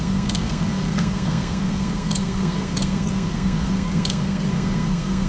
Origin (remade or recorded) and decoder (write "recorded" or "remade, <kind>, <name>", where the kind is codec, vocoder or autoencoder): remade, codec, SNAC